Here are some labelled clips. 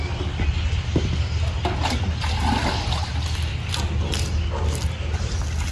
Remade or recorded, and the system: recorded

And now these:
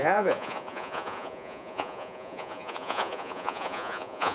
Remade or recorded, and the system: remade, vocoder, Vocos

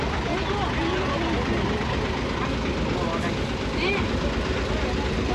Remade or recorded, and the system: recorded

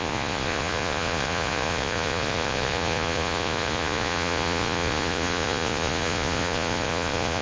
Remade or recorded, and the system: remade, vocoder, Vocos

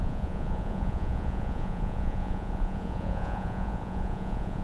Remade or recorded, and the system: remade, vocoder, Vocos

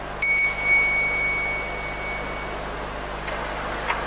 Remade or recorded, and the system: recorded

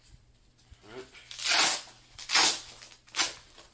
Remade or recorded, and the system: recorded